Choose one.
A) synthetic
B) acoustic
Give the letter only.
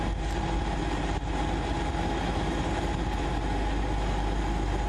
B